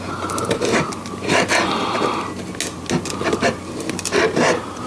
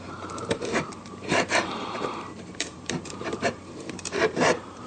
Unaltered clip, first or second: first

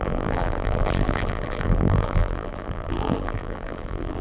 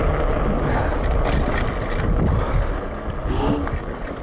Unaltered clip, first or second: second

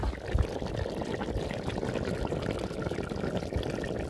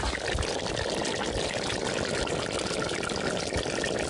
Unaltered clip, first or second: first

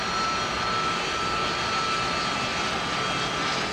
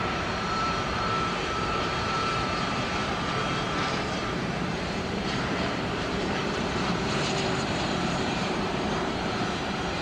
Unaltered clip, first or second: first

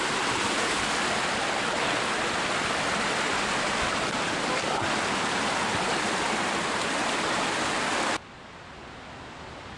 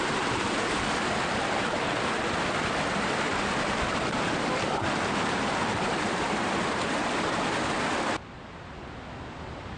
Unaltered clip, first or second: first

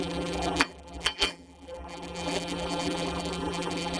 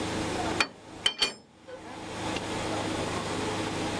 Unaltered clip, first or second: second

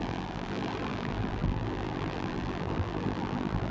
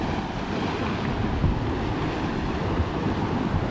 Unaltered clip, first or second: second